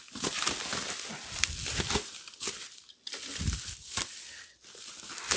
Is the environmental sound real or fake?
real